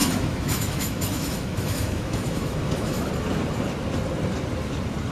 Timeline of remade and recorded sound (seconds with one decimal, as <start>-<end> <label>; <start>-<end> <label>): 0.0-3.1 remade; 3.1-5.1 recorded